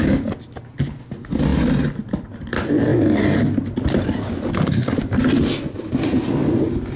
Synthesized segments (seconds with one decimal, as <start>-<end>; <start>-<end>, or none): none

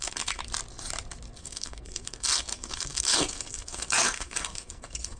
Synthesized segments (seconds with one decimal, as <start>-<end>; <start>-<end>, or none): 0.0-0.4; 1.4-5.2

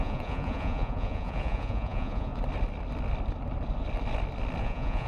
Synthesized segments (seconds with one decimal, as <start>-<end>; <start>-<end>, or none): 0.0-2.3; 4.6-5.1